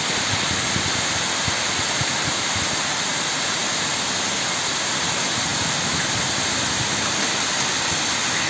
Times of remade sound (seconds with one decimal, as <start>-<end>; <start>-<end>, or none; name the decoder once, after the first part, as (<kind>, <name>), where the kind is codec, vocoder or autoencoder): none